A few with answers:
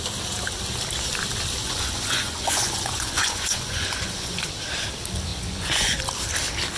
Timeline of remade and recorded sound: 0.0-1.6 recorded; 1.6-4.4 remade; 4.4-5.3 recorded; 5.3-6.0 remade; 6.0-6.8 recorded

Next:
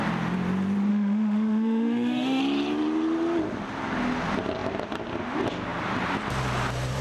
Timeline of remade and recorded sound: 0.0-0.9 recorded; 0.9-2.4 remade; 2.4-7.0 recorded

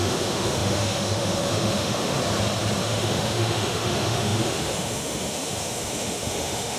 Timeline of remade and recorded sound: 0.0-2.2 remade; 2.2-2.8 recorded; 2.8-6.8 remade

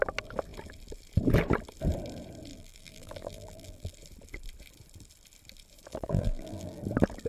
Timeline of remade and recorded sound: 0.0-2.5 recorded; 2.5-3.9 remade; 3.9-5.9 recorded; 5.9-6.8 remade; 6.8-7.3 recorded

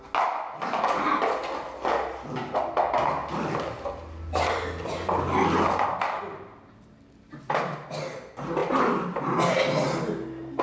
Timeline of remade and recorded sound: 0.0-10.6 recorded

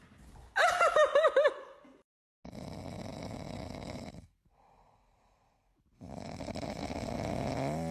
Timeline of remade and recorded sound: 0.0-7.9 recorded

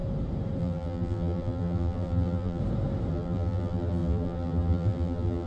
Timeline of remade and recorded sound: 0.0-0.6 recorded; 0.6-2.6 remade; 2.6-3.1 recorded; 3.1-5.5 remade

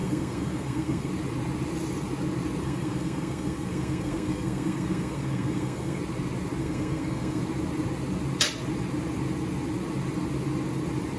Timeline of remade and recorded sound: 0.0-1.1 remade; 1.1-2.6 recorded; 2.6-6.0 remade; 6.0-6.6 recorded; 6.6-7.4 remade; 7.4-11.2 recorded